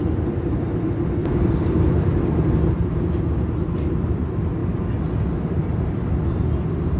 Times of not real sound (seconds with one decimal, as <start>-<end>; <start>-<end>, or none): 1.2-2.5